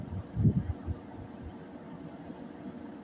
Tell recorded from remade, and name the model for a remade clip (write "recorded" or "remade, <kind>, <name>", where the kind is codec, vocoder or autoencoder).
recorded